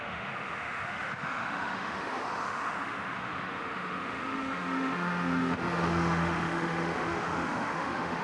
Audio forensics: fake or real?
fake